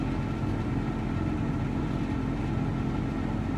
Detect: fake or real real